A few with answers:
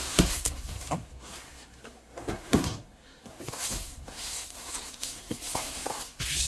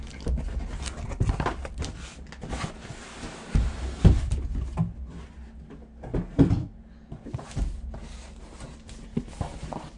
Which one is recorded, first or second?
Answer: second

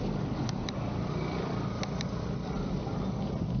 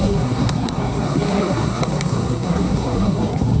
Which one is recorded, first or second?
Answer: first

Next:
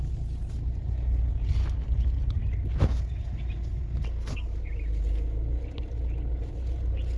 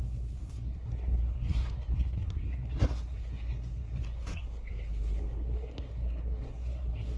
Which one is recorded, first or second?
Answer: first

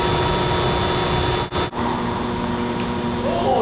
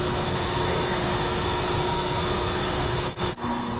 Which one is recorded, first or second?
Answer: first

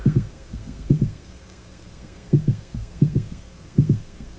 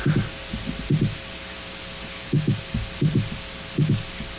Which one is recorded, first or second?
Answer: second